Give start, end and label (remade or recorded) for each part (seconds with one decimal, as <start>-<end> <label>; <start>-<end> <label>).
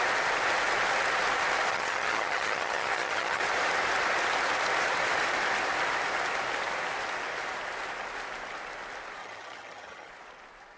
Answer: 0.0-1.7 recorded; 1.7-3.4 remade; 3.4-9.2 recorded; 9.2-10.1 remade; 10.1-10.8 recorded